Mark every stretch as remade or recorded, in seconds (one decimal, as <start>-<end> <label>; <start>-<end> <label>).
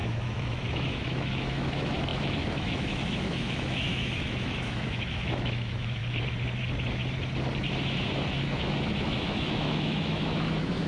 0.0-6.0 remade; 6.0-8.4 recorded; 8.4-10.9 remade